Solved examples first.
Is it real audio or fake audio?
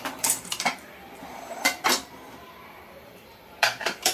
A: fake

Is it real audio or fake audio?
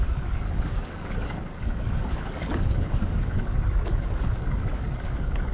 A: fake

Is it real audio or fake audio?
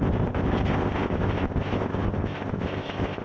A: fake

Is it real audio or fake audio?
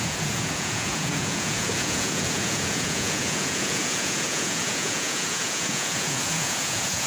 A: fake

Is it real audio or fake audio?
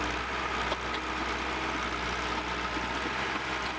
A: real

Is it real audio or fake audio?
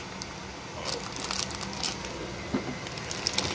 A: real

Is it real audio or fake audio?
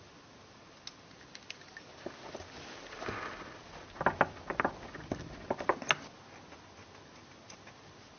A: real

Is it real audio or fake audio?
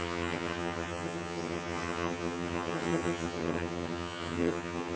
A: fake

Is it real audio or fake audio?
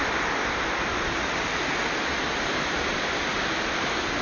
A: real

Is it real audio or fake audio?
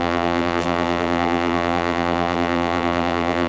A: fake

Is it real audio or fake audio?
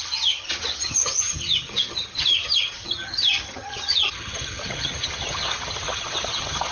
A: fake